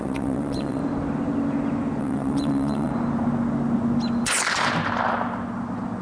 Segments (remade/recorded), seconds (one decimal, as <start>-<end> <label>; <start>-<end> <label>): 0.0-0.8 remade; 0.8-2.0 recorded; 2.0-2.9 remade; 2.9-6.0 recorded